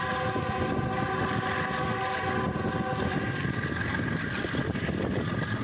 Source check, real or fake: real